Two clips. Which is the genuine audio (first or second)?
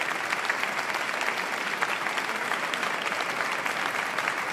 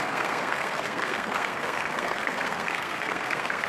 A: first